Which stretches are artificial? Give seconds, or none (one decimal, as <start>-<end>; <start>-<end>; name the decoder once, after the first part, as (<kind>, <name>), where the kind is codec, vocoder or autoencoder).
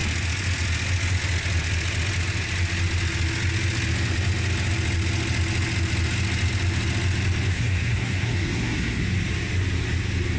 7.5-9.0 (codec, SNAC)